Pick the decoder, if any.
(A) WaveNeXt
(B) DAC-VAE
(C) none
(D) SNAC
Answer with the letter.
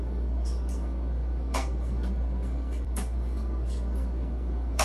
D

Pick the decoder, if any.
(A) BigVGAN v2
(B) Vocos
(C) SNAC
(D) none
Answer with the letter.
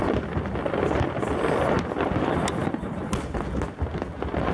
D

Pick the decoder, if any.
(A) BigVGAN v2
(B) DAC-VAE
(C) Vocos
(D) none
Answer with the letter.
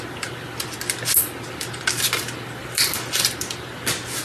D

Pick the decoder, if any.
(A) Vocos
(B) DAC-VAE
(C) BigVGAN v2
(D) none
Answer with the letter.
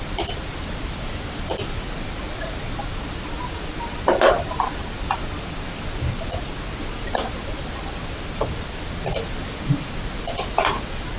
D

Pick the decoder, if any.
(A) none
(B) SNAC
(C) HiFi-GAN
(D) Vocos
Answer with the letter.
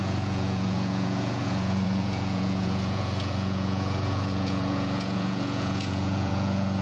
D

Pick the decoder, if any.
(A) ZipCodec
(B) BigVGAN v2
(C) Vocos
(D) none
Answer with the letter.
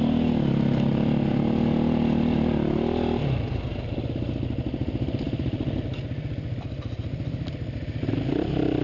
D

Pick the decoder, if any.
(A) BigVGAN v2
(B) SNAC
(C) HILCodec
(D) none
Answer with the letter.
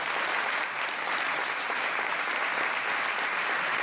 D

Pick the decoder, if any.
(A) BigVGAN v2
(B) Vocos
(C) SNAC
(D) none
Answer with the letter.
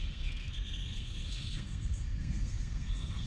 C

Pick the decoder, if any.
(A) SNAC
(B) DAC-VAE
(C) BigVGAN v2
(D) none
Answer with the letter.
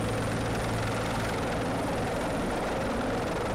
C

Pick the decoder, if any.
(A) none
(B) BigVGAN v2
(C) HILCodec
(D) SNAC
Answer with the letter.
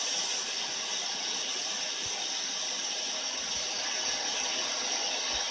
A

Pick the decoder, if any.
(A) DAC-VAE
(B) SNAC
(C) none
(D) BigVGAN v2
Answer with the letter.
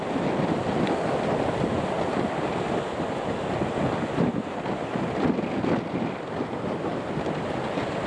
C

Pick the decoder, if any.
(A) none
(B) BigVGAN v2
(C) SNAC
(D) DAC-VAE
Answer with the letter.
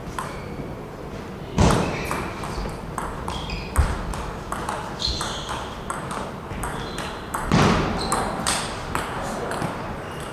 B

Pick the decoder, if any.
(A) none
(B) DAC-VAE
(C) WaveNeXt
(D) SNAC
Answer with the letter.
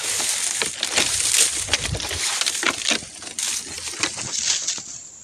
A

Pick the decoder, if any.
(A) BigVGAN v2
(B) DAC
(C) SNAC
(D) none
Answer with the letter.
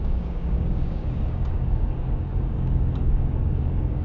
B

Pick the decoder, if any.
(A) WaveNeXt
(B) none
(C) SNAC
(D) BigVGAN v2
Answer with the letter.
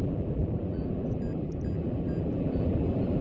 D